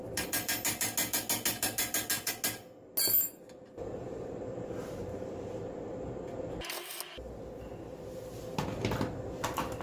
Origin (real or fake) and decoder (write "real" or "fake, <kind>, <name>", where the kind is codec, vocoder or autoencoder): real